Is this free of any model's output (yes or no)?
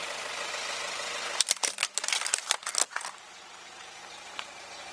yes